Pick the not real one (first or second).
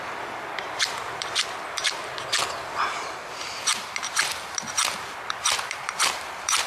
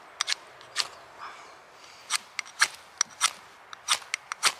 first